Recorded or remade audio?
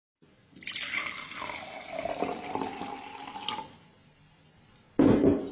recorded